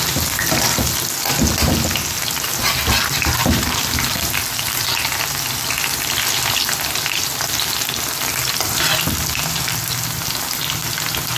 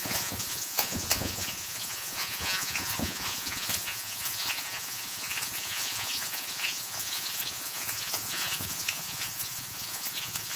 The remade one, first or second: second